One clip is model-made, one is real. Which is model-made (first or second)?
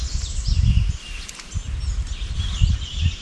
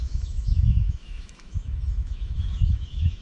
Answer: second